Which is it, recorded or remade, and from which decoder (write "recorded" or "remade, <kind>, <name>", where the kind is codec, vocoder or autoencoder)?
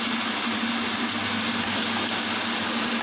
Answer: recorded